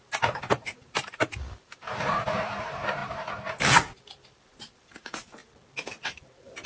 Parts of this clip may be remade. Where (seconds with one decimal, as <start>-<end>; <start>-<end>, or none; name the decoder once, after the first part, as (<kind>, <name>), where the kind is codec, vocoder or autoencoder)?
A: 0.0-3.0 (vocoder, BigVGAN v2); 4.2-5.4